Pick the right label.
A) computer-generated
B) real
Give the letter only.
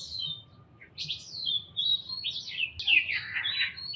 B